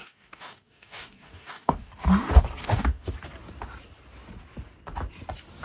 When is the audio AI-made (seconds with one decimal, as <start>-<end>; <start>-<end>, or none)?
0.0-1.9; 2.6-3.1